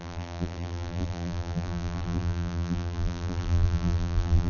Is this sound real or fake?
fake